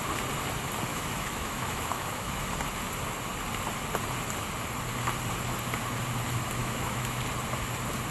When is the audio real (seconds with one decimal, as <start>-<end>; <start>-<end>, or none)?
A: 0.0-0.9; 2.4-6.6; 7.2-8.1